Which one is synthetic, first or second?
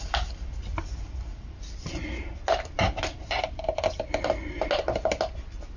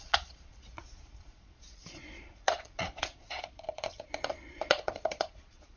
second